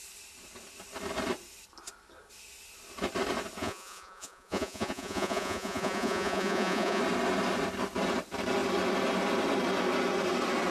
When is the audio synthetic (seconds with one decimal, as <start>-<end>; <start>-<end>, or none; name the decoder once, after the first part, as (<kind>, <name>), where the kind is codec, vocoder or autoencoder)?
3.6-7.0 (vocoder, Vocos)